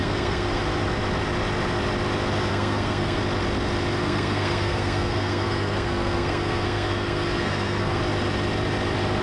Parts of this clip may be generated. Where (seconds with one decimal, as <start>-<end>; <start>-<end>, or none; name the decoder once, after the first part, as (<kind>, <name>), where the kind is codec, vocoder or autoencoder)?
0.0-0.6 (codec, SNAC); 2.5-3.2; 4.0-8.0